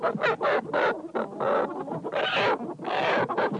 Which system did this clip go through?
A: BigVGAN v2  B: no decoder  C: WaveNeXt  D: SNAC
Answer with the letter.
B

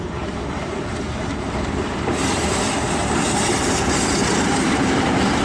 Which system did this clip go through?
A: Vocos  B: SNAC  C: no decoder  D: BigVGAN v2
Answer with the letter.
D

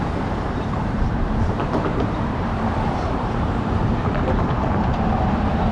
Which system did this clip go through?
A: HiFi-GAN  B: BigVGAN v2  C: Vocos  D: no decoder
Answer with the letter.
B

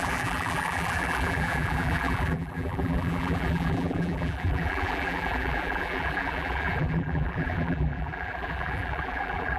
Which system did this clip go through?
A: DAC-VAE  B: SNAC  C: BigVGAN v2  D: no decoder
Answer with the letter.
C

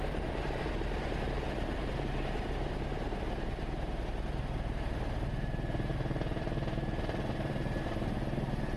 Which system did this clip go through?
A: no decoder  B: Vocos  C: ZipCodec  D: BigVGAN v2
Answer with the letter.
D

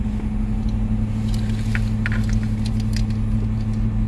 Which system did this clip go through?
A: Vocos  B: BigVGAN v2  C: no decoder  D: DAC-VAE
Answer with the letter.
C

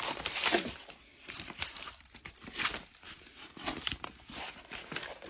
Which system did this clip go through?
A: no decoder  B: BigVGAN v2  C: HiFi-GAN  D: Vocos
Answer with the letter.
B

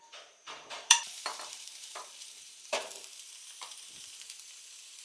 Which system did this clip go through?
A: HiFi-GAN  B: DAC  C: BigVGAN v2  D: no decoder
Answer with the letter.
C